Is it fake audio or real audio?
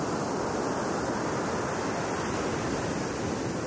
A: real